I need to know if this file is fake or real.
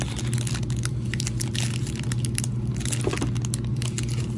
real